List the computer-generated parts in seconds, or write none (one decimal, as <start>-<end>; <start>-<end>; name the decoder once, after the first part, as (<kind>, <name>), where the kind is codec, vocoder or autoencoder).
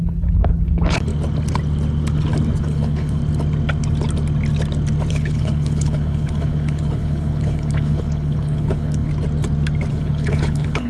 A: 0.0-1.1 (codec, HILCodec); 2.6-3.2; 5.1-9.1; 9.9-10.9